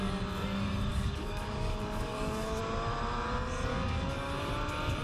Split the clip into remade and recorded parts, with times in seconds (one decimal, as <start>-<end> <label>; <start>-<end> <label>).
0.0-0.9 recorded; 0.9-2.6 remade; 2.6-3.7 recorded; 3.7-4.3 remade; 4.3-5.0 recorded